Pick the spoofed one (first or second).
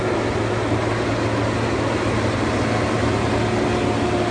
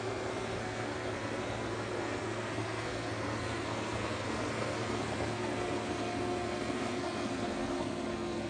second